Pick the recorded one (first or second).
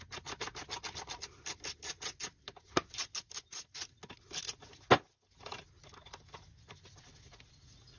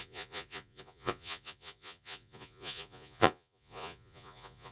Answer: first